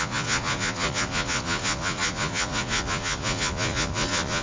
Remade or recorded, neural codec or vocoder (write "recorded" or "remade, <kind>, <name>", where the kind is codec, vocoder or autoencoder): remade, vocoder, Vocos